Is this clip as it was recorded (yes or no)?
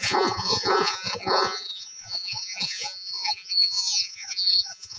no